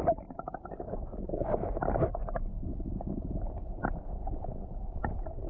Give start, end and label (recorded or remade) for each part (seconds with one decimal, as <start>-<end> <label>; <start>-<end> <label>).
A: 0.0-5.5 recorded